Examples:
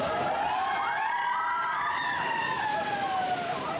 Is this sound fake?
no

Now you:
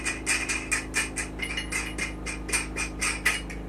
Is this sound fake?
no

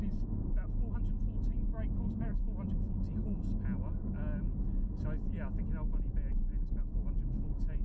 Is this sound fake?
no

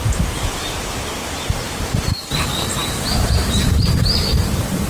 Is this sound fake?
yes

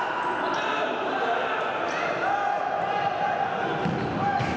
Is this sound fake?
no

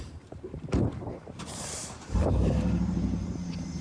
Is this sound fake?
yes